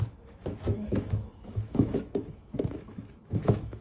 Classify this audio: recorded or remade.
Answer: remade